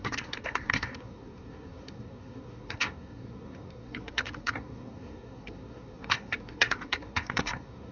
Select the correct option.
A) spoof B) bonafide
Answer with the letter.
A